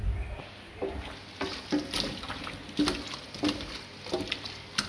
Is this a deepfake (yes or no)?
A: no